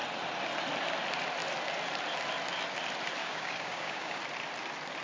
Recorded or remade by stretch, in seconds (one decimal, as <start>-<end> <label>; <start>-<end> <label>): 0.0-3.2 recorded; 3.2-4.2 remade; 4.2-5.0 recorded